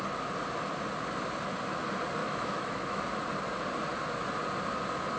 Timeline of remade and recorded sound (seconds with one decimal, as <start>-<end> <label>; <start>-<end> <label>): 0.0-2.2 recorded; 2.2-3.0 remade; 3.0-5.2 recorded